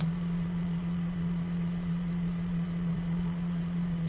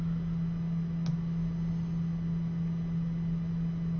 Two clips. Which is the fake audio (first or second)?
first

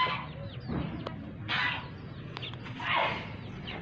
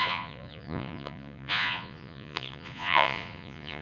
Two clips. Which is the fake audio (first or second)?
second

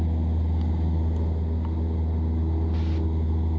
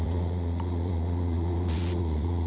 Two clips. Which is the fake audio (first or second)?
second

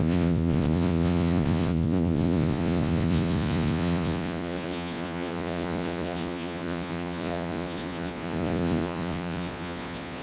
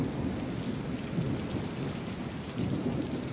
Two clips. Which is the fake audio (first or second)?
first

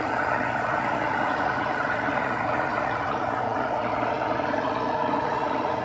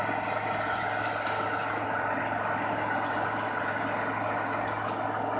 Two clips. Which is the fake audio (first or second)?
first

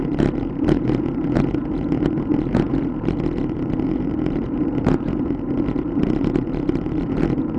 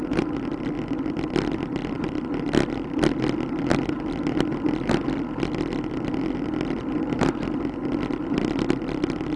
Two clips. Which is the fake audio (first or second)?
first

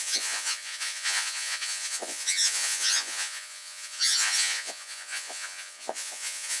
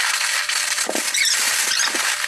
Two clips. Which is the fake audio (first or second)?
first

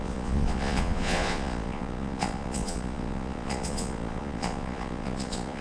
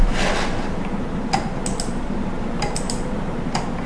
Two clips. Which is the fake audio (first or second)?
first